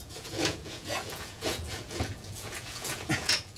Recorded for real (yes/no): no